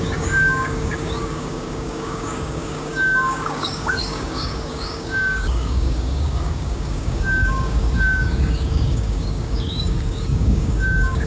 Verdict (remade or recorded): remade